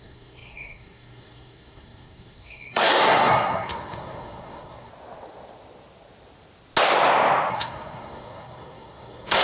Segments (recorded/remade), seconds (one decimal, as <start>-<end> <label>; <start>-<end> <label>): 0.0-4.9 remade; 4.9-7.5 recorded; 7.5-9.4 remade